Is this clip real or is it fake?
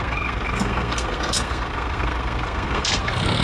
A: fake